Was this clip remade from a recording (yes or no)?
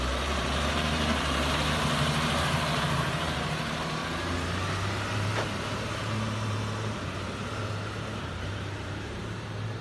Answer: yes